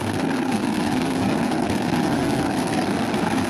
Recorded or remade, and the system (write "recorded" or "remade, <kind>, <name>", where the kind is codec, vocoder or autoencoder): remade, codec, SNAC